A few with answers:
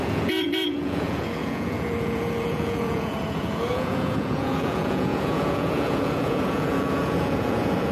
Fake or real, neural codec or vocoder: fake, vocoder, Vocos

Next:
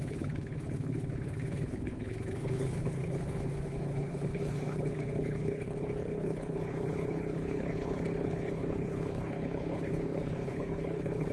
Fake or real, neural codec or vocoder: fake, codec, HILCodec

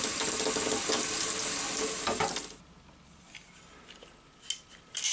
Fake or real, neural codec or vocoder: real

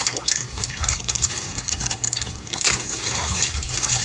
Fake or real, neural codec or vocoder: fake, codec, SNAC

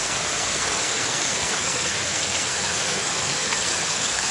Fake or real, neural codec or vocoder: fake, codec, SNAC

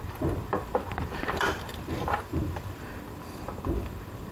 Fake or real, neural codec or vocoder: fake, vocoder, BigVGAN v2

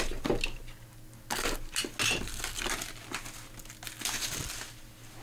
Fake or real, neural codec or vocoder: real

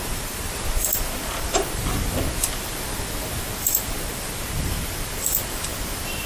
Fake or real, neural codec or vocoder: fake, vocoder, BigVGAN v2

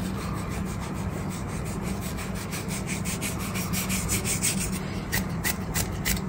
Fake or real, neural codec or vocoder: real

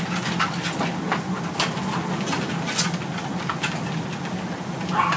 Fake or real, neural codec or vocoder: real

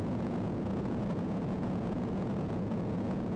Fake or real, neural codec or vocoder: fake, vocoder, Vocos